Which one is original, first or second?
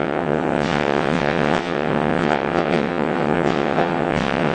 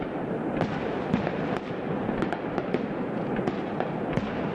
second